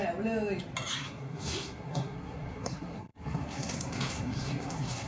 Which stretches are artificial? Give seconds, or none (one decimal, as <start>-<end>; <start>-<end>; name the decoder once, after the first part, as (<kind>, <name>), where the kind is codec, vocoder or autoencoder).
0.9-5.1 (codec, SNAC)